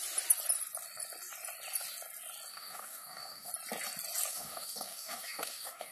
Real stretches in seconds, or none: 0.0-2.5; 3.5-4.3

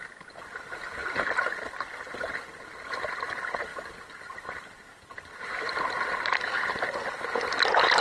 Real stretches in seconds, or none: 0.0-3.7; 6.1-8.0

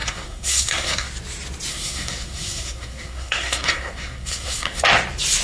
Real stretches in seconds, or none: 1.1-1.7; 4.8-5.4

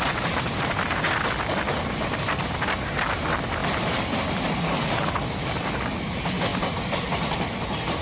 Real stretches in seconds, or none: 0.0-8.0

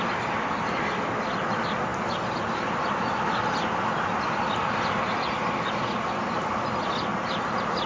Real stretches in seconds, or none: 0.0-7.9

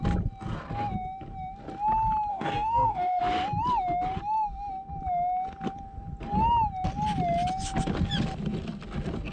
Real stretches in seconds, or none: 0.0-2.3; 3.2-9.3

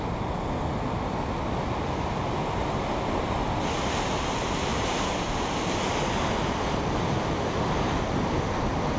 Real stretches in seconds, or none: 0.0-4.7; 5.2-9.0

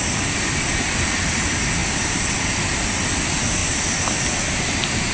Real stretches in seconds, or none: 0.0-5.1